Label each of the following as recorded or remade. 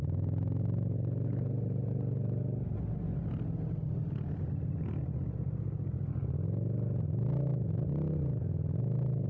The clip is recorded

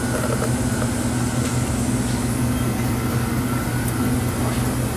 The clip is recorded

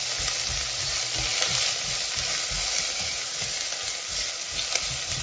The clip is recorded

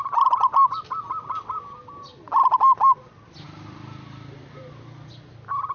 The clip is recorded